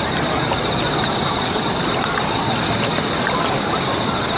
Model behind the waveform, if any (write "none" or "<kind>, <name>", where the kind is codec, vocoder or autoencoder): none